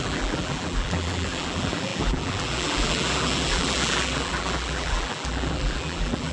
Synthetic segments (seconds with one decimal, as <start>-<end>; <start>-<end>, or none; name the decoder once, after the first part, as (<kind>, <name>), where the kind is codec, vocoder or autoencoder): 0.0-6.3 (vocoder, BigVGAN v2)